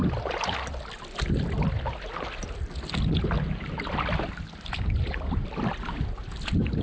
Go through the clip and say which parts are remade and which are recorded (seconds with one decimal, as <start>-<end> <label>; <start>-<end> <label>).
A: 0.0-6.8 recorded